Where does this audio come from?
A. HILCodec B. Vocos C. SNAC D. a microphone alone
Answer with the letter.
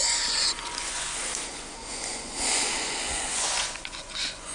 B